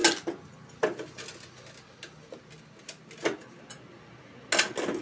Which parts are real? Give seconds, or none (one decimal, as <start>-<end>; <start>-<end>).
0.0-5.0